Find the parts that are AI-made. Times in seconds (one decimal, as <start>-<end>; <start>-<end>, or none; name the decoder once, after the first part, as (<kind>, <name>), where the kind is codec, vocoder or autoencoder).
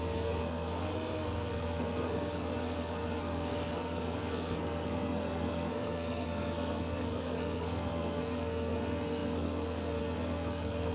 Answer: 0.0-10.9 (codec, SNAC)